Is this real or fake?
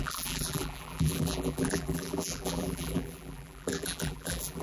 fake